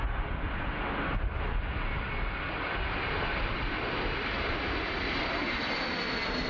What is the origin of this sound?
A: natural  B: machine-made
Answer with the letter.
A